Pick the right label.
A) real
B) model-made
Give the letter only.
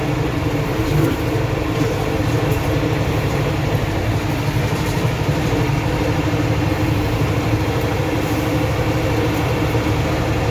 B